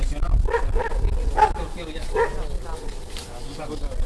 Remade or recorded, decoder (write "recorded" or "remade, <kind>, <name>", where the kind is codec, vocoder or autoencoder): recorded